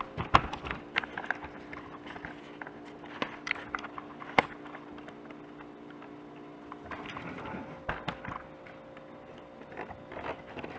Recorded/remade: recorded